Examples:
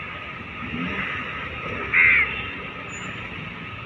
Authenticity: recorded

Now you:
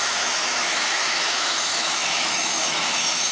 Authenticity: remade